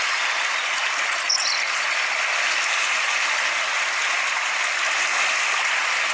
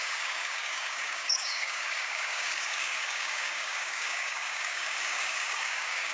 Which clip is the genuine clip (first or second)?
first